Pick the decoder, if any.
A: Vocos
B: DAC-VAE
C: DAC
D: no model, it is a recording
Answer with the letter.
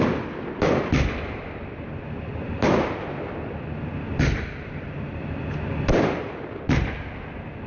D